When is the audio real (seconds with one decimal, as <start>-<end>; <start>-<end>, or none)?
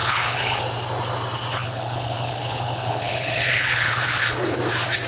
0.6-1.5; 4.6-5.1